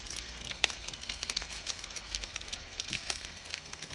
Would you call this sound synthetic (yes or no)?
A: yes